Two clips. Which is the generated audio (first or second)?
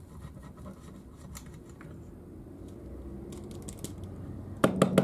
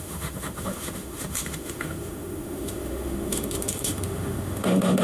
second